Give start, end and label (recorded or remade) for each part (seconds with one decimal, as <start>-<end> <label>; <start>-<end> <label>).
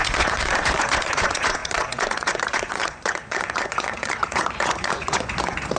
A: 0.0-5.8 remade